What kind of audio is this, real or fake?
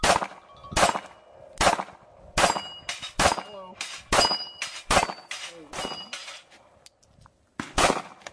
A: real